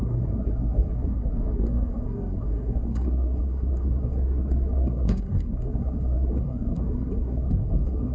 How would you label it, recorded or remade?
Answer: remade